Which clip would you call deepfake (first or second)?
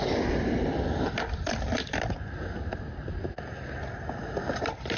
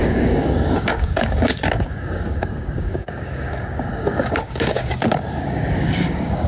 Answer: second